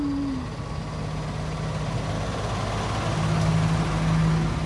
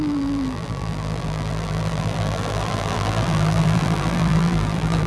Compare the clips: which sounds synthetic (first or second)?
second